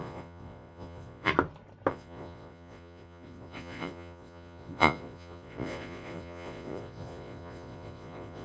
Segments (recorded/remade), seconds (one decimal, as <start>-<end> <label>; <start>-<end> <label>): 0.0-1.3 remade; 1.3-1.9 recorded; 1.9-8.4 remade